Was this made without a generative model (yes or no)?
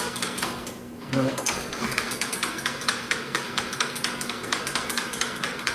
no